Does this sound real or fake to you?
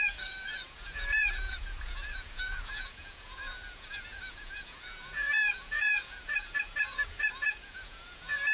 fake